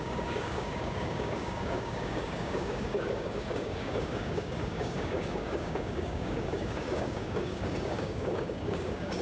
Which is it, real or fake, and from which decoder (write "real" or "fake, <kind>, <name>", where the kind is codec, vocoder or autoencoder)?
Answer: fake, codec, DAC